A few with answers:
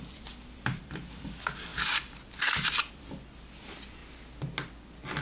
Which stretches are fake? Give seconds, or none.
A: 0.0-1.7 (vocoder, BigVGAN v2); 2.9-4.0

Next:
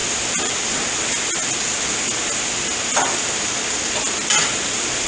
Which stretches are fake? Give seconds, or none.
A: 0.0-0.7 (vocoder, BigVGAN v2)

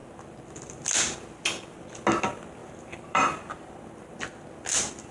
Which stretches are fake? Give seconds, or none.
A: 2.6-3.8 (vocoder, BigVGAN v2)

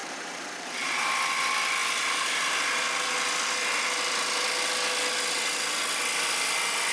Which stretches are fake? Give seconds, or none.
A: 0.0-1.1 (vocoder, BigVGAN v2)

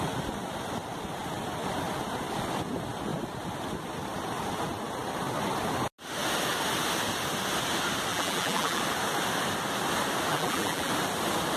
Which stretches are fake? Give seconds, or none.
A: 8.1-8.8 (vocoder, BigVGAN v2); 10.3-10.9

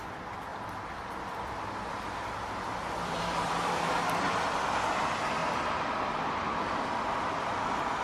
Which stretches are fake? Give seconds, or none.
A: 0.5-3.9 (vocoder, BigVGAN v2); 5.4-6.8

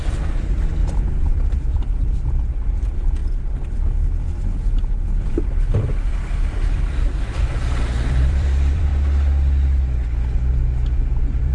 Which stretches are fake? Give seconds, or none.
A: 0.0-0.8 (vocoder, BigVGAN v2); 1.3-3.2; 6.5-8.9; 11.1-11.5